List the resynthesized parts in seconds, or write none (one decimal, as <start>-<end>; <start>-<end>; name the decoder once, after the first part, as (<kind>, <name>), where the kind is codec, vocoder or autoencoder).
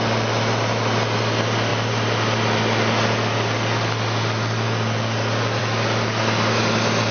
none